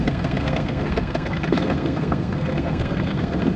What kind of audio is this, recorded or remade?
remade